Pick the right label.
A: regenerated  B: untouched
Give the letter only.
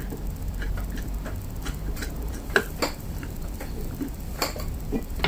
A